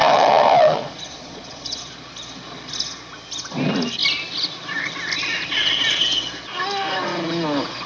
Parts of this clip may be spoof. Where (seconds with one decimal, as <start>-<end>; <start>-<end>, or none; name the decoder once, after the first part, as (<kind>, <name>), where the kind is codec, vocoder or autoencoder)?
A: 0.0-1.8 (vocoder, Vocos)